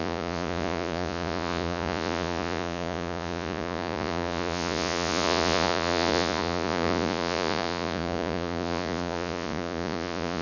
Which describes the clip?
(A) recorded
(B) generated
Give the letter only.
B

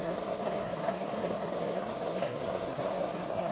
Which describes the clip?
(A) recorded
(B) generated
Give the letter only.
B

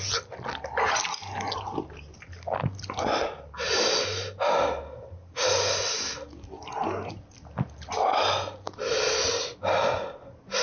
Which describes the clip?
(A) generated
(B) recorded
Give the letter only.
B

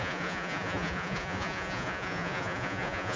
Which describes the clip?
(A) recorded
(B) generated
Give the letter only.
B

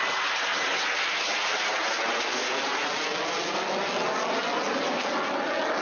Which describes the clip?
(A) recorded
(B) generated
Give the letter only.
A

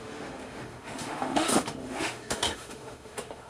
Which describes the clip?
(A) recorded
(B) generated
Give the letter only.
B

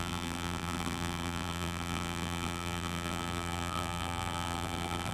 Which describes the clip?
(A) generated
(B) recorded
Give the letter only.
A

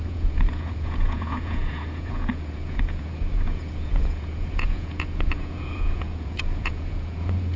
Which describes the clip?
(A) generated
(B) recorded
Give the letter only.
A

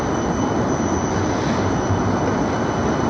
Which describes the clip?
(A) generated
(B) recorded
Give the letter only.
B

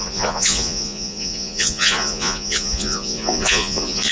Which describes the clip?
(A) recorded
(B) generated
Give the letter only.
B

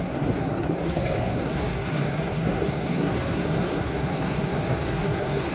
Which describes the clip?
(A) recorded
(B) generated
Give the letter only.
B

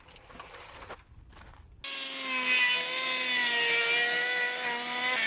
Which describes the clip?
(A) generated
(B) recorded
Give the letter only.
B